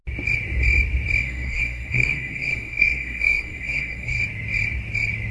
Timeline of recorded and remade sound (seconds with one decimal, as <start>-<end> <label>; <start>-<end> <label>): 0.0-1.2 recorded; 1.2-4.2 remade; 4.2-5.3 recorded